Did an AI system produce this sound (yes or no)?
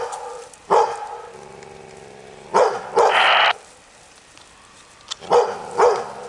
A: no